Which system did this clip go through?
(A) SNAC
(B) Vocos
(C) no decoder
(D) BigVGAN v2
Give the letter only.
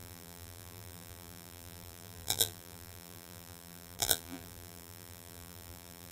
D